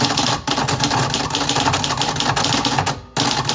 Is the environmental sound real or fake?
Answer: real